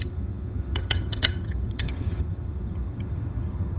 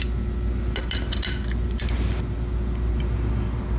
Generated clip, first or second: first